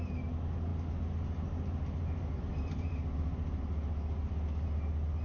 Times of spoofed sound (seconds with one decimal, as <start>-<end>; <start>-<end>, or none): none